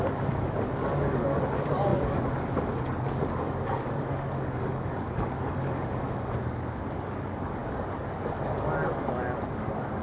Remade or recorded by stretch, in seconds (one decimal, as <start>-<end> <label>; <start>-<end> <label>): 0.0-10.0 remade